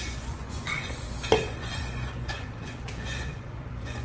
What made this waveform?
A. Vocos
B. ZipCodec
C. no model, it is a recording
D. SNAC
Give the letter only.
A